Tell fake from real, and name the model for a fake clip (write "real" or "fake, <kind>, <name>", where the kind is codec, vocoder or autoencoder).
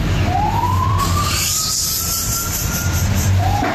fake, vocoder, BigVGAN v2